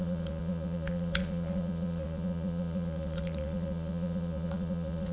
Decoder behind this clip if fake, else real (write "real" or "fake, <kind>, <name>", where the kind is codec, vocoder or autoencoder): fake, vocoder, Vocos